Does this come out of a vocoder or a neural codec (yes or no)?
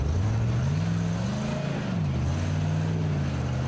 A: no